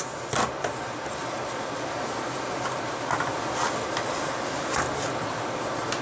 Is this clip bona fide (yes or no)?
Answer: yes